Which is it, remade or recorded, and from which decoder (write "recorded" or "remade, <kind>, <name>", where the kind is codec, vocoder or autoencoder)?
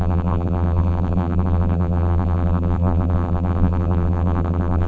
remade, vocoder, BigVGAN v2